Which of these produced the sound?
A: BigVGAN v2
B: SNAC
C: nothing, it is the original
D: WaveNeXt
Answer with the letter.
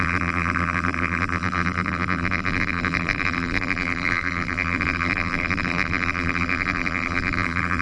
A